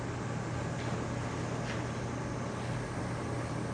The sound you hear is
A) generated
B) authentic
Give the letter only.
B